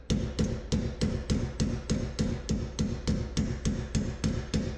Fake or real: real